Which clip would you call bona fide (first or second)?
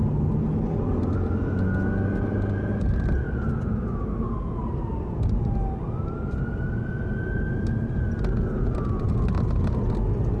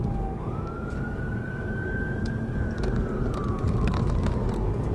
first